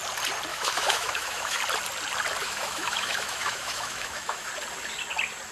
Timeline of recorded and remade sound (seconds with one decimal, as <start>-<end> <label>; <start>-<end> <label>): 0.0-0.5 recorded; 0.5-1.6 remade; 1.6-2.4 recorded; 2.4-4.5 remade; 4.5-5.5 recorded